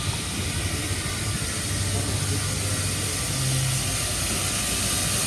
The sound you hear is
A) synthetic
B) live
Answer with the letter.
B